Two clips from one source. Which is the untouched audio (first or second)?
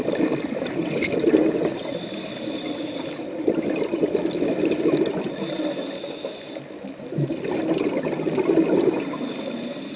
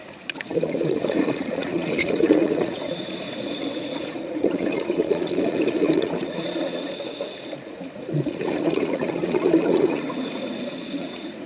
first